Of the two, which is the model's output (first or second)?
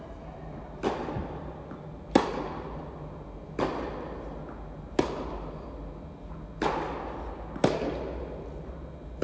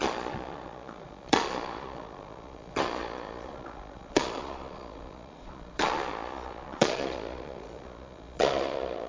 second